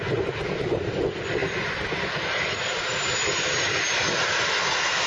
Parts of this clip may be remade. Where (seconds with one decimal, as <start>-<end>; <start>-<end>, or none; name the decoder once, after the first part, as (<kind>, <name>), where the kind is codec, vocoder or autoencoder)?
none